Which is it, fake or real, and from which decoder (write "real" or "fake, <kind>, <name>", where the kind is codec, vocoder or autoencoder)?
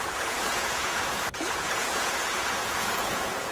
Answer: fake, vocoder, Vocos